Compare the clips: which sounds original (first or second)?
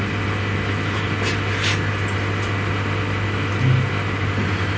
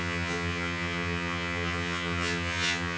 first